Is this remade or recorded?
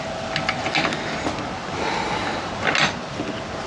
recorded